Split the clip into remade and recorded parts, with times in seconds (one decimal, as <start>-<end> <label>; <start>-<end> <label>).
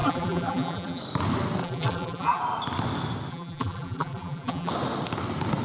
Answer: 0.0-1.0 remade; 1.0-1.6 recorded; 1.6-2.4 remade; 2.4-3.3 recorded; 3.3-4.7 remade; 4.7-5.6 recorded